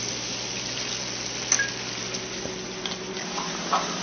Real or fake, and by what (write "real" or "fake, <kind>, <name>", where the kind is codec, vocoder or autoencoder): real